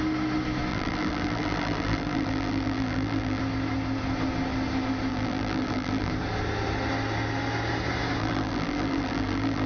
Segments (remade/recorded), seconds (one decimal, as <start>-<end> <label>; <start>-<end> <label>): 0.0-0.7 recorded; 0.7-3.4 remade; 3.4-5.1 recorded; 5.1-6.1 remade; 6.1-8.2 recorded; 8.2-9.7 remade